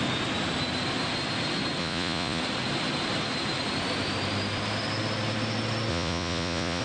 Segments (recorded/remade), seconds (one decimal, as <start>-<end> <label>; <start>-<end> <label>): 0.0-1.8 recorded; 1.8-2.4 remade; 2.4-5.9 recorded; 5.9-6.8 remade